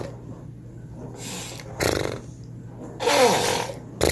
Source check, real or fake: real